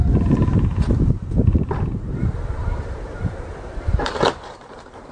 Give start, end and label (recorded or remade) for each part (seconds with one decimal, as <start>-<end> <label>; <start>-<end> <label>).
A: 0.0-0.7 recorded; 0.7-1.6 remade; 1.6-2.2 recorded; 2.2-5.1 remade

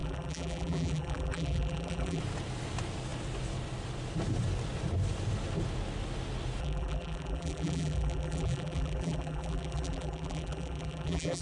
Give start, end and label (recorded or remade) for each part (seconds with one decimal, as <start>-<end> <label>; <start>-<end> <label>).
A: 0.0-2.2 remade; 2.2-6.6 recorded; 6.6-11.4 remade